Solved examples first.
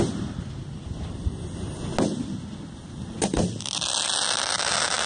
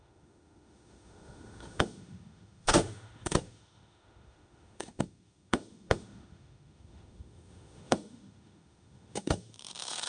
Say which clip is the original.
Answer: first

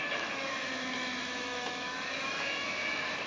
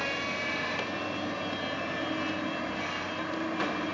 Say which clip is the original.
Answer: second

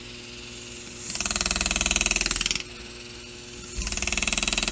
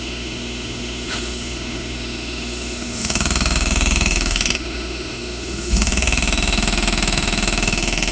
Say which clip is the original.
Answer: first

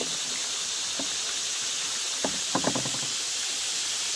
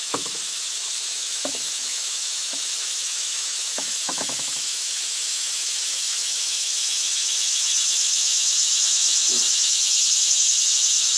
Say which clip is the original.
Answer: first